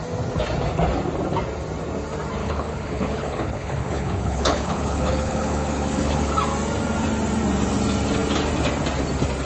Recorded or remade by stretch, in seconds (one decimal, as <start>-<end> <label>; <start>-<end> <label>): 0.0-2.4 recorded; 2.4-6.3 remade; 6.3-9.5 recorded